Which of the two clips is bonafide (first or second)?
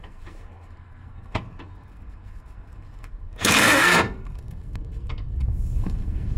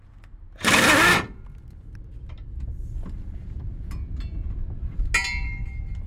second